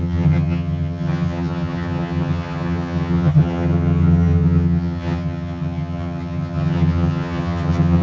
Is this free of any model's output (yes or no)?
no